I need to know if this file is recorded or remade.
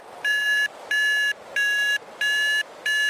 recorded